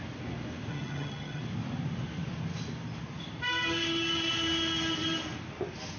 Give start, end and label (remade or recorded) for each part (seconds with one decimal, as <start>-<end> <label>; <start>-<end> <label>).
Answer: 0.0-0.7 recorded; 0.7-1.4 remade; 1.4-6.0 recorded